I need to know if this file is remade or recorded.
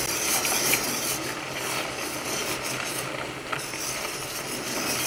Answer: recorded